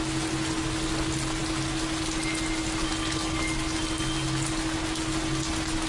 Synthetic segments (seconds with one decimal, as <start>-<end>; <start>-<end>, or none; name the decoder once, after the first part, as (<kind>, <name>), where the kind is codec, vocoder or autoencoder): none